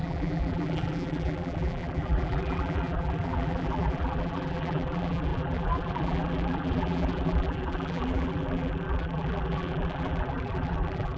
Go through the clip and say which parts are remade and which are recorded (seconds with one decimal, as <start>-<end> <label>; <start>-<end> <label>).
0.0-11.2 remade